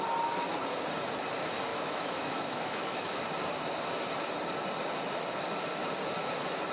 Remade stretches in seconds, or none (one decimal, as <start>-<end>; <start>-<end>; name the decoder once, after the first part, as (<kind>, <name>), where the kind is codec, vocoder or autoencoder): 1.7-3.2 (autoencoder, DAC-VAE)